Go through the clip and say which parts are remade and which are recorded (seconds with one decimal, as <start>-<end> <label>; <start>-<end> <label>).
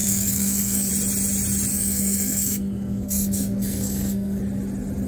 0.0-0.9 remade; 0.9-1.7 recorded; 1.7-4.4 remade; 4.4-5.1 recorded